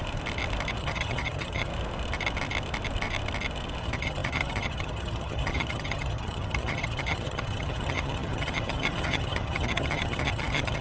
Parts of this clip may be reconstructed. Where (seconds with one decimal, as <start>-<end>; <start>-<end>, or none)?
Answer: 0.8-1.7; 3.8-10.8